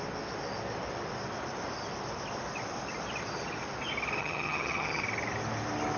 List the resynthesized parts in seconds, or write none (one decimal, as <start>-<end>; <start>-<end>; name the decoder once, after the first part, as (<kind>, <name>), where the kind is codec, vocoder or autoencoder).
4.2-5.0 (vocoder, HiFi-GAN)